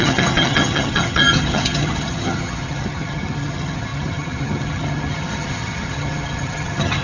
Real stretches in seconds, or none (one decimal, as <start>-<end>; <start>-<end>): none